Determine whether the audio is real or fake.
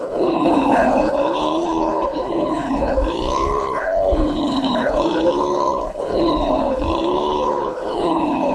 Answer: fake